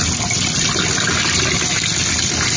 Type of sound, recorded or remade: recorded